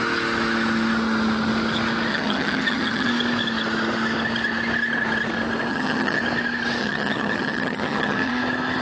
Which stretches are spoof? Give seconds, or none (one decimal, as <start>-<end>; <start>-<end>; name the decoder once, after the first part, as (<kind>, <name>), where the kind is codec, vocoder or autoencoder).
2.1-3.1 (vocoder, HiFi-GAN); 5.7-6.2; 6.8-8.3

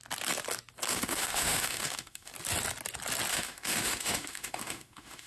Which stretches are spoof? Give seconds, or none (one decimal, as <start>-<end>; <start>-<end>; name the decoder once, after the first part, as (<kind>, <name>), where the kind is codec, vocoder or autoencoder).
0.9-2.3 (autoencoder, DAC-VAE); 3.3-5.3

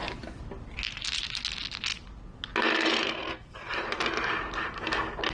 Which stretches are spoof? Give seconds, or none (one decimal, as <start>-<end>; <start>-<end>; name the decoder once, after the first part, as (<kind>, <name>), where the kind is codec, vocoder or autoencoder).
none

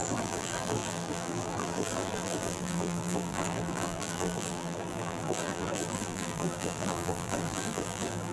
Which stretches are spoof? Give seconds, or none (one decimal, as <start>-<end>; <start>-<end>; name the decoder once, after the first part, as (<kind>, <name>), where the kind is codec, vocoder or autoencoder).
0.0-8.3 (vocoder, BigVGAN v2)

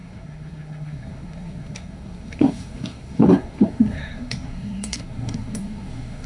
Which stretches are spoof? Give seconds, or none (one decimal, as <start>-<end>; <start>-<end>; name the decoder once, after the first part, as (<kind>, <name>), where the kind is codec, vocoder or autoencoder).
0.0-6.3 (codec, SNAC)

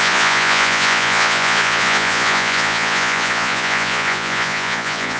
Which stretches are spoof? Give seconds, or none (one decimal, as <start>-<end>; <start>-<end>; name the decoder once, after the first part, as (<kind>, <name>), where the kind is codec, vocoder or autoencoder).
0.0-5.2 (vocoder, Vocos)

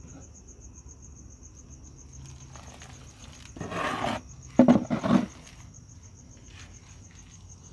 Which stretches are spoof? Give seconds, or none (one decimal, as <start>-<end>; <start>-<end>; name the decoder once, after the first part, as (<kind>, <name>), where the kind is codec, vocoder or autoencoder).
none